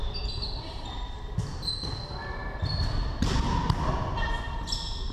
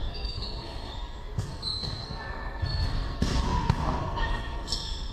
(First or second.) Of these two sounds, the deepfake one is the second